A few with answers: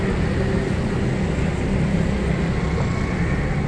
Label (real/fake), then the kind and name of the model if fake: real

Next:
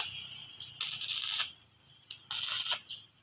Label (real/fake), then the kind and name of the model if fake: real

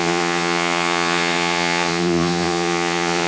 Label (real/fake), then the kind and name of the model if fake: fake, vocoder, Vocos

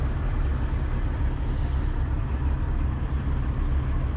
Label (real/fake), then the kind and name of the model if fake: real